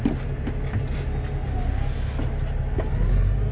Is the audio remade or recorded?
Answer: recorded